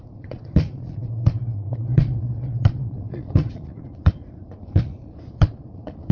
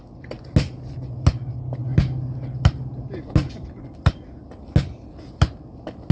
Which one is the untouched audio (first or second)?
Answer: second